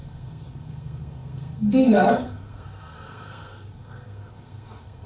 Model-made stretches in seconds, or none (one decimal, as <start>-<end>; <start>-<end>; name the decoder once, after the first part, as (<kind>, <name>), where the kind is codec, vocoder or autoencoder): 0.0-5.1 (codec, SNAC)